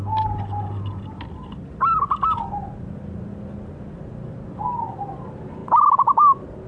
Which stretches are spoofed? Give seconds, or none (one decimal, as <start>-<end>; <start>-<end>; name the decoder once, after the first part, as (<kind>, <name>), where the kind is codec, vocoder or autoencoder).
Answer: none